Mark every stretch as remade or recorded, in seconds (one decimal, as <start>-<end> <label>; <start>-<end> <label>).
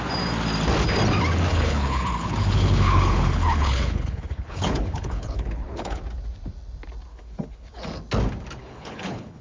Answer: 0.0-1.5 recorded; 1.5-6.0 remade; 6.0-7.1 recorded; 7.1-7.8 remade; 7.8-8.6 recorded; 8.6-9.4 remade